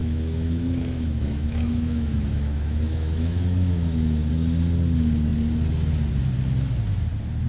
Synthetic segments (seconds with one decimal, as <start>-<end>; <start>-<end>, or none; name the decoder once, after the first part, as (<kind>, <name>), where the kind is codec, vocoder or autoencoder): 0.0-4.3 (autoencoder, DAC-VAE)